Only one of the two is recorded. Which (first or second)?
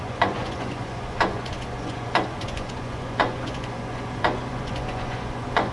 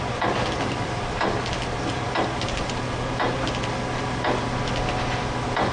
second